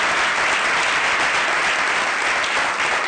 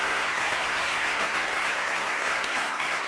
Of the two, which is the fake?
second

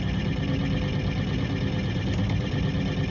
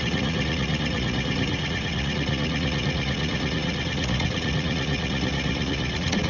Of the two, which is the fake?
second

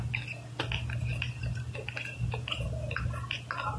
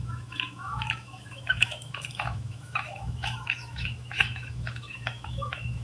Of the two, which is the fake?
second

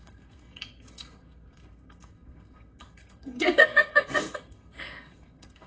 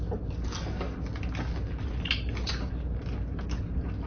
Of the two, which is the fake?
first